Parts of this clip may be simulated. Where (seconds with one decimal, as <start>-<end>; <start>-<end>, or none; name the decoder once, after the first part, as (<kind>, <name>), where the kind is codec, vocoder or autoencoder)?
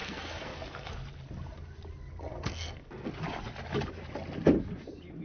0.0-0.9 (codec, SNAC); 2.3-3.1